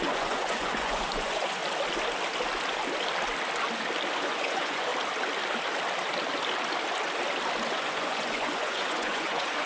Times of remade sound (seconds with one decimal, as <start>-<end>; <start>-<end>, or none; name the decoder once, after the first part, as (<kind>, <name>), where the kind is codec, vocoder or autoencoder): 0.0-1.6 (vocoder, Vocos); 4.2-4.9; 7.7-9.7